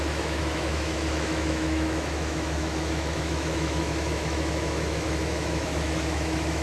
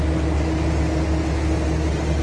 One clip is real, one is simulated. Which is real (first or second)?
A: second